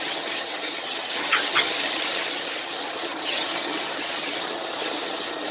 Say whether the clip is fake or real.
fake